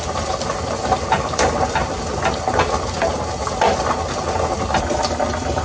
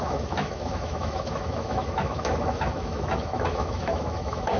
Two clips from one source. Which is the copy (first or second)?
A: second